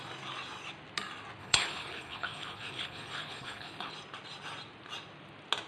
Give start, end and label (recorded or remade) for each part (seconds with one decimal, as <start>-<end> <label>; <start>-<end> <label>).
0.0-1.4 recorded; 1.4-3.9 remade; 3.9-5.7 recorded